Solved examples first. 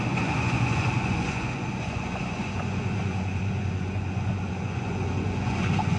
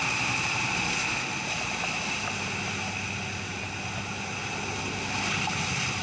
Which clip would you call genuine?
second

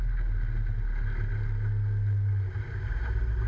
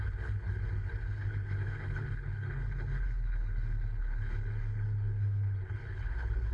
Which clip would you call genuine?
first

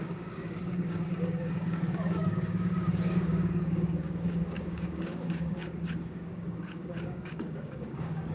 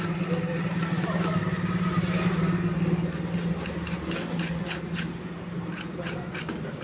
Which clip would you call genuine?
second